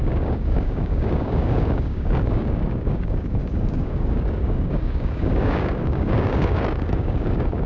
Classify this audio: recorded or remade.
remade